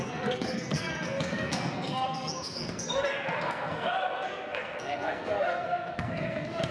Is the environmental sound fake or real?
fake